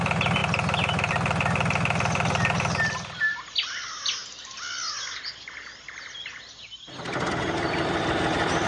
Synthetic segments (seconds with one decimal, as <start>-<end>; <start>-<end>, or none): none

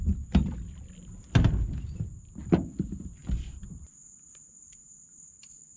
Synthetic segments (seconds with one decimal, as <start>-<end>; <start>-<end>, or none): 0.0-5.8

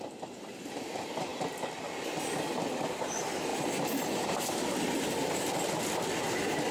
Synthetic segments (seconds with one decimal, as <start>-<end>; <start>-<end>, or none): none